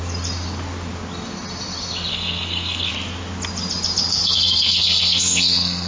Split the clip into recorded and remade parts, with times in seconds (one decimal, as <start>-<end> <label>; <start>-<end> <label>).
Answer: 0.0-2.1 recorded; 2.1-2.9 remade; 2.9-4.1 recorded; 4.1-5.9 remade